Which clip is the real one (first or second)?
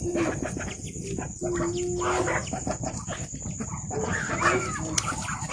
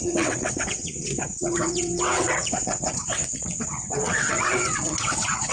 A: first